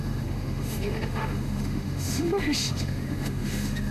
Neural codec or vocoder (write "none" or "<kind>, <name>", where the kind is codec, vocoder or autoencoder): autoencoder, DAC-VAE